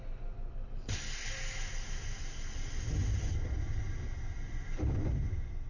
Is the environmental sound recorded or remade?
recorded